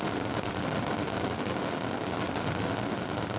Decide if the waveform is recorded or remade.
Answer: recorded